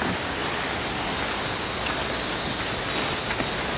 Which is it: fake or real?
real